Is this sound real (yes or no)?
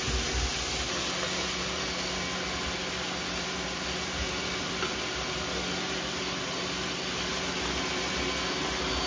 yes